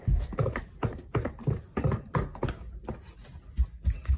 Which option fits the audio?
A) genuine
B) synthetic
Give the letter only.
A